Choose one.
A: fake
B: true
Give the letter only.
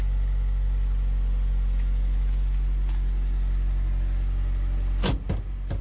B